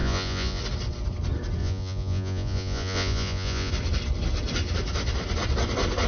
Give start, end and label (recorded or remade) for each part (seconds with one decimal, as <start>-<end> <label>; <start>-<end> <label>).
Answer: 0.0-0.6 remade; 0.6-1.6 recorded; 1.6-3.7 remade; 3.7-6.1 recorded